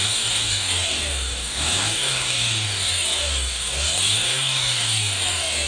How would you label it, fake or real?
fake